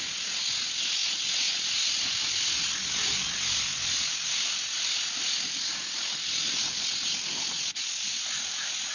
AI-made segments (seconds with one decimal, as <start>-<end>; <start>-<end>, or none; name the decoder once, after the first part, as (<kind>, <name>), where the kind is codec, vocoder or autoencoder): none